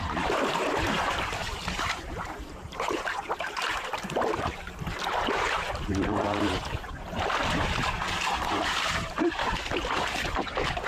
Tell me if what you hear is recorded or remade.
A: remade